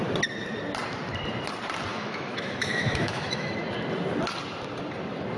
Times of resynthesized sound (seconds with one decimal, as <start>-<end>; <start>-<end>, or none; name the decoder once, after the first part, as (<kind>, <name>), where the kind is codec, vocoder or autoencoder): 1.9-3.5 (autoencoder, DAC-VAE)